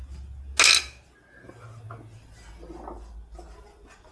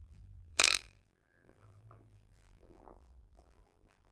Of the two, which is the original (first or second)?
first